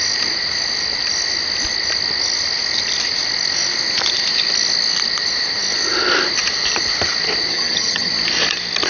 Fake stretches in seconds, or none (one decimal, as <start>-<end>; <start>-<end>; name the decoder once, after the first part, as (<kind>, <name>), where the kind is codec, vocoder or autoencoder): 7.5-8.1 (vocoder, HiFi-GAN)